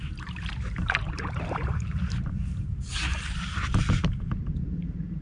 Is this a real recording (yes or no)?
no